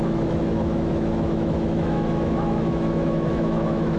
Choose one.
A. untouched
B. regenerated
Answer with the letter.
B